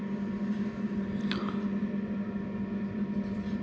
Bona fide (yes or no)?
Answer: yes